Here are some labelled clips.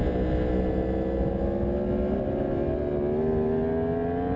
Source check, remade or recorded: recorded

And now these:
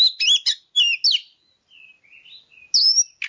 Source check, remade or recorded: recorded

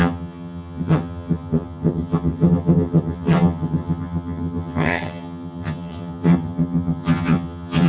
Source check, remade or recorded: remade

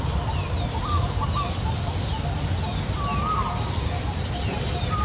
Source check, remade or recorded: recorded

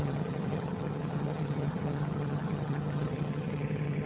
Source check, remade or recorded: remade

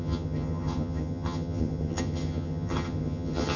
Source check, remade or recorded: remade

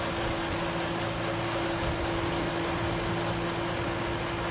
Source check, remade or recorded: recorded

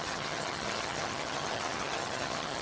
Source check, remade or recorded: remade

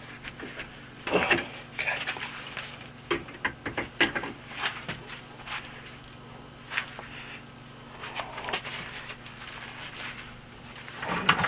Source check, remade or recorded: recorded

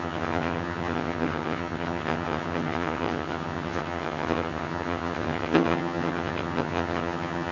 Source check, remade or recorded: remade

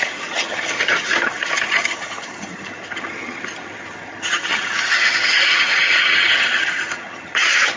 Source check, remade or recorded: remade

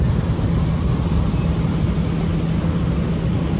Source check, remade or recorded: recorded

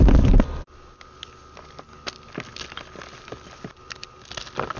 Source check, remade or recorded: recorded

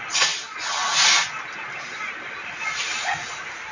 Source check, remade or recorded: recorded